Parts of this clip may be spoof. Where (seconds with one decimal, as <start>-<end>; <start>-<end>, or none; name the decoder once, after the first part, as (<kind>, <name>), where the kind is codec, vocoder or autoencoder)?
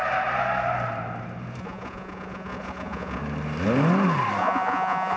1.6-3.2 (vocoder, Vocos); 4.4-5.2